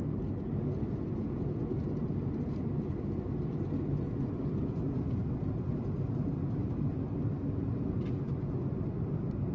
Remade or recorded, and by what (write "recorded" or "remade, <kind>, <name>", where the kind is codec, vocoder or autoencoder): recorded